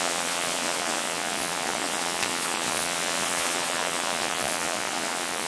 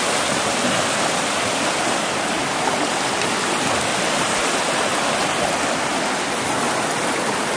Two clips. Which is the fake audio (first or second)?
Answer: first